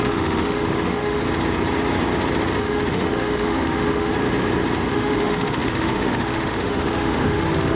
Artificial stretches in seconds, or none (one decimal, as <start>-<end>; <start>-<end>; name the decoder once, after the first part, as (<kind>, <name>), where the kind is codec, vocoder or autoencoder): 0.0-1.2 (autoencoder, DAC-VAE); 2.6-4.1; 4.9-7.8